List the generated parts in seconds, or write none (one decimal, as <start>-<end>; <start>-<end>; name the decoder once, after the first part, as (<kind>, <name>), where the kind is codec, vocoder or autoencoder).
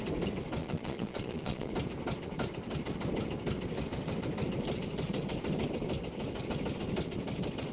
0.6-1.7 (vocoder, Vocos)